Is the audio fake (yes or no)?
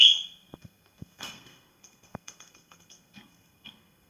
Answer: yes